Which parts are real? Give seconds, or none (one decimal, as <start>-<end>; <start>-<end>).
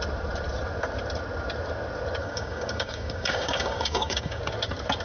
0.0-2.2; 4.4-5.0